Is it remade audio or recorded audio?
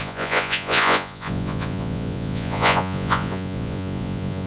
remade